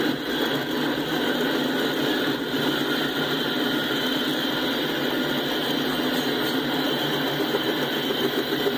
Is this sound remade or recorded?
recorded